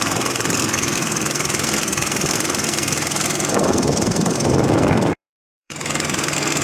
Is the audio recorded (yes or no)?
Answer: no